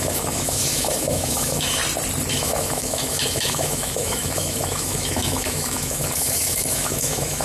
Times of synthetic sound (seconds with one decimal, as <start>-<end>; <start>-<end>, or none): 0.0-1.8; 2.3-7.4